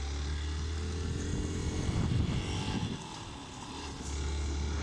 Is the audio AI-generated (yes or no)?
no